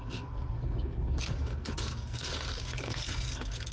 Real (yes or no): no